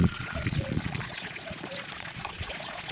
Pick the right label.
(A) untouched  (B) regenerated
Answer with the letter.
B